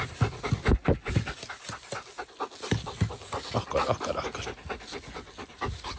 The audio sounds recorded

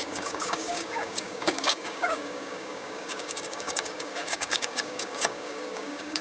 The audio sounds remade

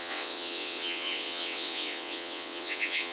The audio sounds remade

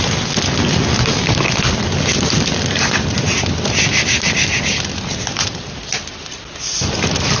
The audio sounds recorded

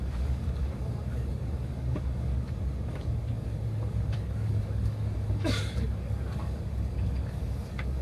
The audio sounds remade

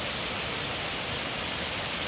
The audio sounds recorded